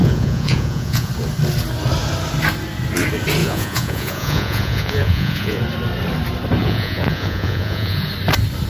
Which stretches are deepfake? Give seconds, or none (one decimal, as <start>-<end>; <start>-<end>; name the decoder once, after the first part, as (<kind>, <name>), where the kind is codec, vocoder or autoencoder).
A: 0.0-1.1 (vocoder, Vocos); 3.4-5.6; 6.6-8.1